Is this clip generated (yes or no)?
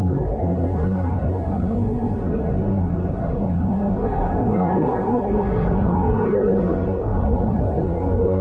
yes